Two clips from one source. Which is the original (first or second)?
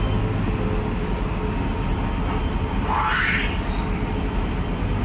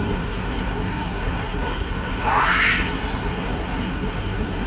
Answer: first